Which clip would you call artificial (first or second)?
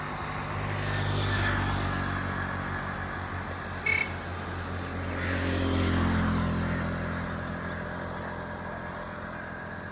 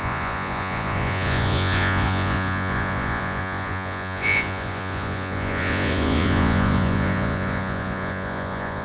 second